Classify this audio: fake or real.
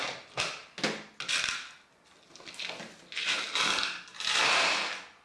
real